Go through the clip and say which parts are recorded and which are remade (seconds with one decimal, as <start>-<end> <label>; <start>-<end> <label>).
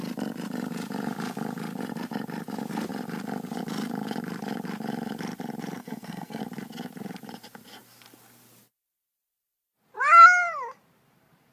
0.0-5.8 recorded; 5.8-6.4 remade; 6.4-11.5 recorded